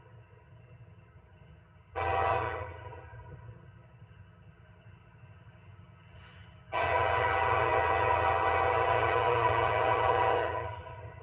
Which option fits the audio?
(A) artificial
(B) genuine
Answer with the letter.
A